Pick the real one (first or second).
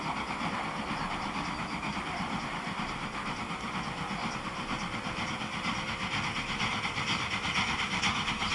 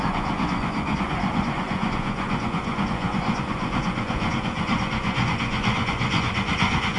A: first